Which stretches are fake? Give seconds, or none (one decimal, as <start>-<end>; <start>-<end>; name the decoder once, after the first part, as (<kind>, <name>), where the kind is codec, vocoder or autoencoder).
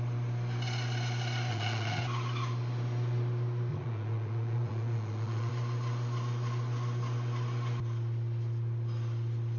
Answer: 1.5-2.0 (vocoder, Vocos); 3.7-5.5